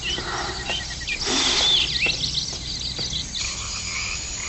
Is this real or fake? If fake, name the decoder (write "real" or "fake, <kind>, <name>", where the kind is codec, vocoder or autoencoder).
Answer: real